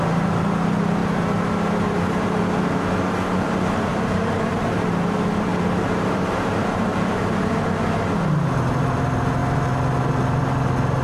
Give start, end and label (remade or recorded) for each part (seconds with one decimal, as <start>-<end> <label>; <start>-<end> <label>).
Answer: 0.0-1.0 recorded; 1.0-2.4 remade; 2.4-3.9 recorded; 3.9-4.9 remade; 4.9-5.5 recorded; 5.5-7.5 remade; 7.5-11.0 recorded